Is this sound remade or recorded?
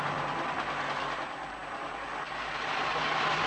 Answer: recorded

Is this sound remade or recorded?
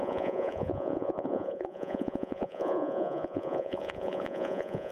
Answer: remade